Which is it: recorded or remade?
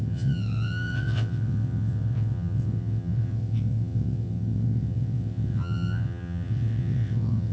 remade